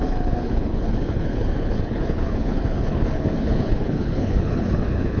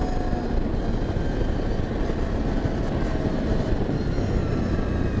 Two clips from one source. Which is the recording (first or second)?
second